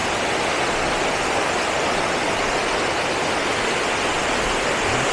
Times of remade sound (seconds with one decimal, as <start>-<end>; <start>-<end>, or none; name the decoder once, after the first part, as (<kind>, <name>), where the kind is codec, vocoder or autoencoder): none